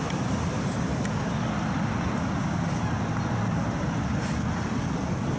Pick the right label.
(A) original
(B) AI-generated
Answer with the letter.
A